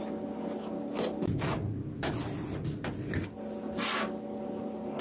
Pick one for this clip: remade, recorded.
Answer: recorded